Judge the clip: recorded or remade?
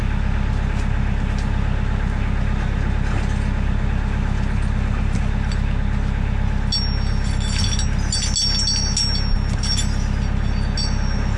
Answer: recorded